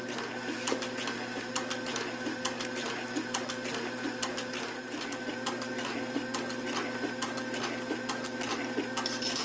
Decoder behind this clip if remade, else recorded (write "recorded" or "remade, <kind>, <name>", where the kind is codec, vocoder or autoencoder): recorded